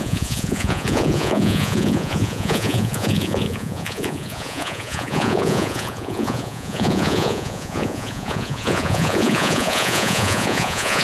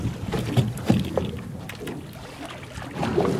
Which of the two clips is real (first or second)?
second